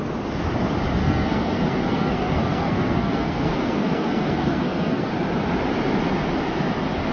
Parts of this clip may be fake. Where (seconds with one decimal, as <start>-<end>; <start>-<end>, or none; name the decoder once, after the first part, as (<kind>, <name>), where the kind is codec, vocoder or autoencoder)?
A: 1.0-5.1 (codec, SNAC)